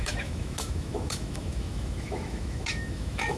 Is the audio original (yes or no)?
no